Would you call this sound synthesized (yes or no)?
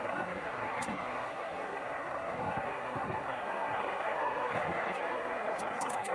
yes